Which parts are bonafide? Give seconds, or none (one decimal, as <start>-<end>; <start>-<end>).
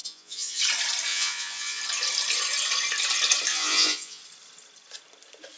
0.6-1.1; 1.8-3.5; 4.2-5.6